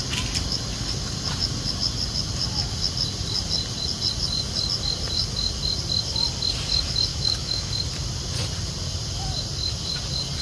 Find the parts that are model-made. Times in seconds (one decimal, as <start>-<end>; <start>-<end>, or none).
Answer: 7.1-7.7